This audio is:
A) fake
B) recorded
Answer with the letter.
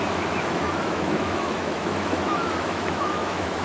A